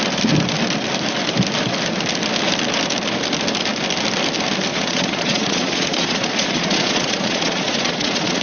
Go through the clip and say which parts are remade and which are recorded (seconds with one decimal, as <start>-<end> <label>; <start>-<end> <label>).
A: 0.0-4.7 recorded; 4.7-8.4 remade